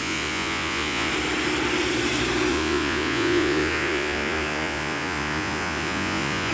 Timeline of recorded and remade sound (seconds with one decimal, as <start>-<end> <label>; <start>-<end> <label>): 0.0-1.1 remade; 1.1-2.5 recorded; 2.5-6.5 remade